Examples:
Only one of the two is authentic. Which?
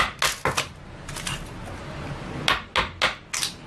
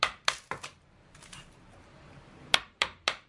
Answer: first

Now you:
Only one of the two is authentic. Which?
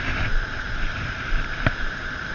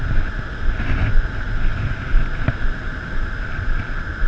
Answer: second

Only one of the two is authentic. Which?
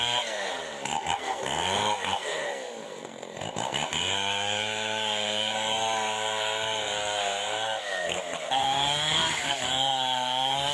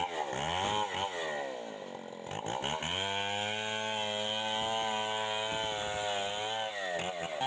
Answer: second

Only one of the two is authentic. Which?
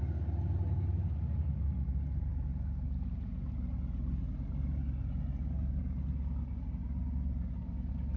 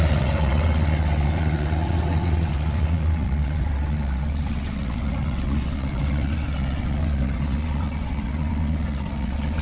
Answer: first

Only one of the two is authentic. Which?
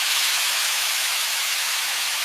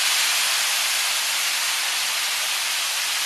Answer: second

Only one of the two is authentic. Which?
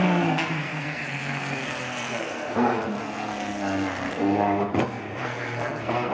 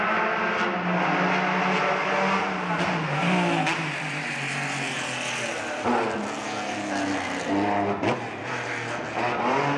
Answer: second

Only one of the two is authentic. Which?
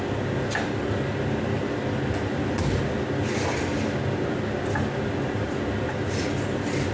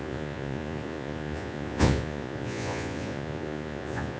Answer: first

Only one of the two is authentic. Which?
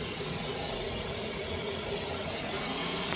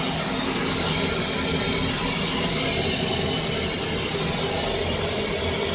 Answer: second